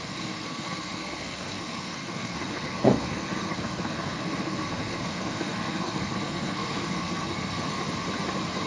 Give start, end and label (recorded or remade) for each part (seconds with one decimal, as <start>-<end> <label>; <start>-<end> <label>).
0.0-7.8 remade; 7.8-8.7 recorded